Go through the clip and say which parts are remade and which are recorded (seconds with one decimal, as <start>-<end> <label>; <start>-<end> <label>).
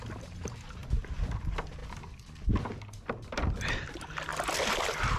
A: 0.0-5.2 recorded